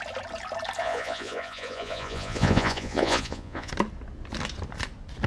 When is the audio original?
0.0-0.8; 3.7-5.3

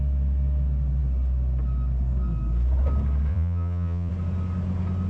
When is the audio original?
0.0-3.3; 4.1-5.1

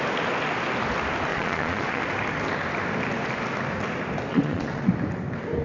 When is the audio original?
0.0-1.3; 2.0-4.3; 4.9-5.6

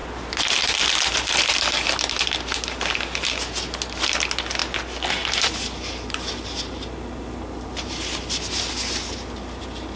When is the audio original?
0.0-10.0

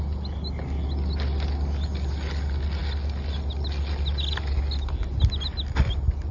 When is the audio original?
0.0-6.3

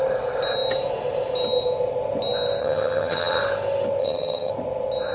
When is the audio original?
0.0-2.6; 3.4-4.0; 4.5-5.1

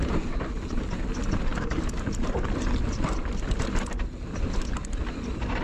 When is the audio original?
0.0-5.6

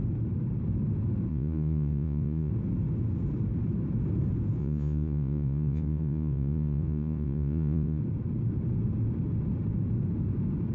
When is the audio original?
0.0-1.3; 2.5-4.6; 8.0-10.7